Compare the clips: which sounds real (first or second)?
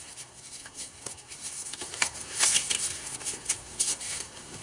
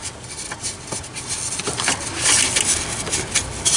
second